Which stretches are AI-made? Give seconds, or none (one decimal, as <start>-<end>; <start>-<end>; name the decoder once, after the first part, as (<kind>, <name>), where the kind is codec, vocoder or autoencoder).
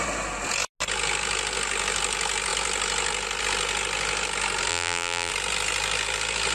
4.7-5.3 (vocoder, BigVGAN v2)